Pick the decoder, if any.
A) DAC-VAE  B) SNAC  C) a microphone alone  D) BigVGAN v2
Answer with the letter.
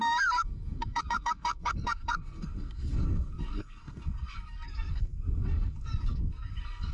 B